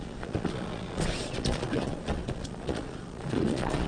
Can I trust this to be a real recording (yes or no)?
no